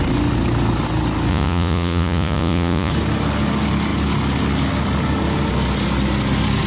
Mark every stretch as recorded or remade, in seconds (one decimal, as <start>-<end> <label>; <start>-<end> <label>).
0.0-1.3 recorded; 1.3-2.9 remade; 2.9-6.7 recorded